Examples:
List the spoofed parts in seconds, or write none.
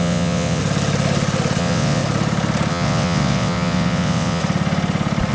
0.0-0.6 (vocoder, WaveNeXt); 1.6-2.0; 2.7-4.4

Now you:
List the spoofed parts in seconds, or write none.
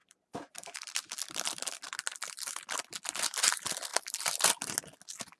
0.0-1.6 (vocoder, BigVGAN v2); 3.9-4.6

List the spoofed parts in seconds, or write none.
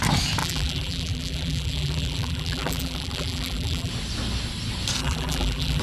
0.4-3.9 (vocoder, BigVGAN v2); 5.0-5.8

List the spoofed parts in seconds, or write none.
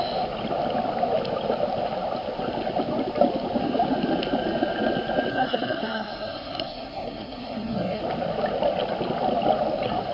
5.3-8.0 (codec, SNAC)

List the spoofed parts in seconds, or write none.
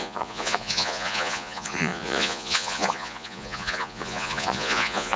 0.0-5.2 (vocoder, Vocos)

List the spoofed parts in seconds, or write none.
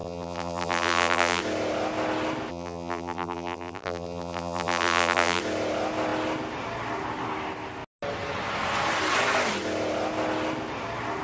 0.0-1.4 (vocoder, BigVGAN v2); 2.5-5.4